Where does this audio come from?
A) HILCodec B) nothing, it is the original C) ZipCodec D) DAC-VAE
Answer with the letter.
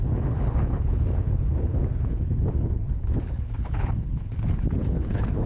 A